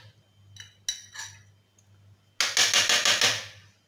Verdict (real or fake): real